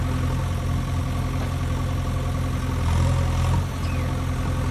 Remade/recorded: recorded